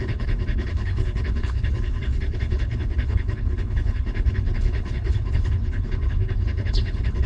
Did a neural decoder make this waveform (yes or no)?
yes